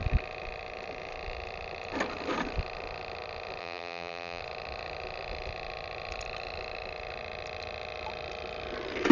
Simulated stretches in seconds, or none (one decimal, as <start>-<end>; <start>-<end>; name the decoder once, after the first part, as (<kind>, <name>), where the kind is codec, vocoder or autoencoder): 3.6-4.4 (vocoder, BigVGAN v2)